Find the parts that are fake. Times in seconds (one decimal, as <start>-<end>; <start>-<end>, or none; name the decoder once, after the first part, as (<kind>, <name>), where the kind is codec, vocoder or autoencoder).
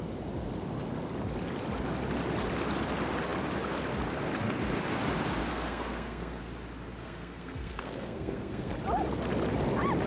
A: 5.5-6.4 (codec, SNAC); 7.0-8.7